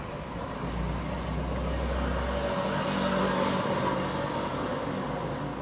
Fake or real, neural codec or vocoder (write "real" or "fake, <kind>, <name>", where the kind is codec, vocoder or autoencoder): real